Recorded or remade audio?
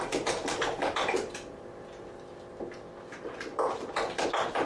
recorded